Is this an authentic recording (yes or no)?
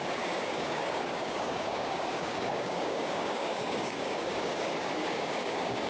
no